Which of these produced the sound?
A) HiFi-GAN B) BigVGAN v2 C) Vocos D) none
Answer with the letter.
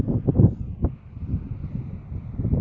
B